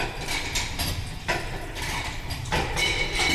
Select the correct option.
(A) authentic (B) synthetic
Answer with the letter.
A